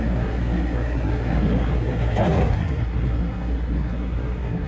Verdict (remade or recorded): remade